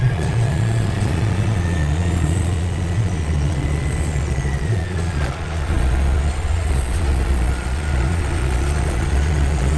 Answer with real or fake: fake